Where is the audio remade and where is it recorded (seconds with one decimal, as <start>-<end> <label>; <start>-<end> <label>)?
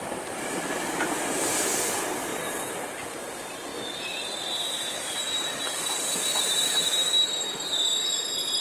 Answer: 0.0-2.3 remade; 2.3-3.1 recorded; 3.1-3.7 remade; 3.7-4.9 recorded; 4.9-8.6 remade